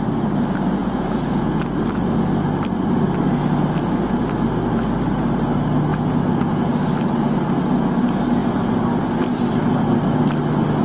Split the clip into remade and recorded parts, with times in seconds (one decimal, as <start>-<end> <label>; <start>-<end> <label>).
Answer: 0.0-0.8 recorded; 0.8-1.6 remade; 1.6-5.9 recorded; 5.9-6.7 remade; 6.7-10.8 recorded